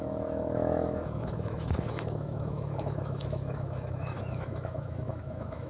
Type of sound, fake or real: fake